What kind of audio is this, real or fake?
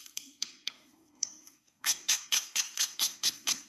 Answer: fake